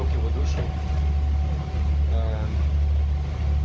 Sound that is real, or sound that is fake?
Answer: real